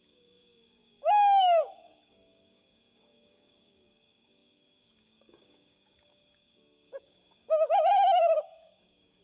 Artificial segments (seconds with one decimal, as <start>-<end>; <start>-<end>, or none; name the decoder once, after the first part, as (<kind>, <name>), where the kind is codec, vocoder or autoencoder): 0.0-9.2 (codec, DAC)

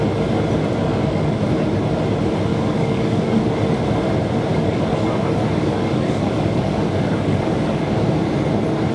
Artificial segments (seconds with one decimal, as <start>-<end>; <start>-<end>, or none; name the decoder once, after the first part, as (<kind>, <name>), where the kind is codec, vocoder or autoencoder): 0.8-1.4 (codec, DAC); 2.5-3.5; 4.5-8.1

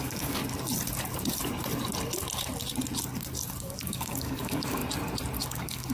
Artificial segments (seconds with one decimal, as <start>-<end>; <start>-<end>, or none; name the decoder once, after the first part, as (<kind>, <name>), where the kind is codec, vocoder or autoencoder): 0.0-0.4 (codec, DAC); 3.6-4.8; 5.4-5.9

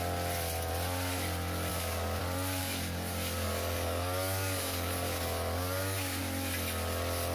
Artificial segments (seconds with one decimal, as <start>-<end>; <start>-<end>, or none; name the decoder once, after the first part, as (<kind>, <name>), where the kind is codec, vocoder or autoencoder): 1.7-2.2 (codec, DAC); 2.6-6.2

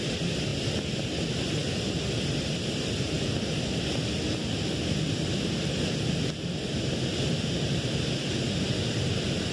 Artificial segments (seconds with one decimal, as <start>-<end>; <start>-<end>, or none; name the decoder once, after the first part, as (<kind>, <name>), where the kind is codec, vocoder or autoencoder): none

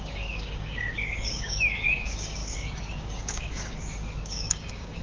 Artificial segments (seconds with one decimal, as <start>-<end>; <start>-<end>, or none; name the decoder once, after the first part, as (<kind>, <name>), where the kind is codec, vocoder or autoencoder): 0.0-5.0 (codec, DAC)

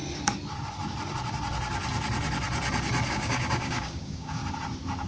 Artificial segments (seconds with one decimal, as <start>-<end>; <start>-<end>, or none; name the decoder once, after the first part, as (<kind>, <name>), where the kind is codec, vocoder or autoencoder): 3.1-4.4 (codec, DAC)